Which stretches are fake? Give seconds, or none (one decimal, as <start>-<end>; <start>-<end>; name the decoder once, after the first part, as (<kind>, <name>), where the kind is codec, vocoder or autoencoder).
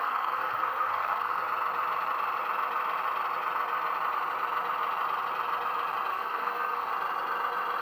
0.0-1.4 (codec, SNAC); 6.1-6.9